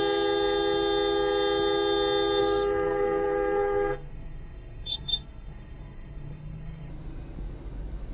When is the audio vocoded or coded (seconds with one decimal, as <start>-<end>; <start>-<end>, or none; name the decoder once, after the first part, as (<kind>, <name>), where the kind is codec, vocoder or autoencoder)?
2.4-6.9 (codec, SNAC)